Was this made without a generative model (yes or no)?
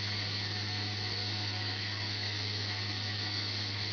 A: no